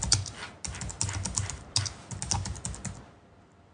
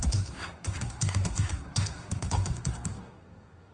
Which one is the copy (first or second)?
second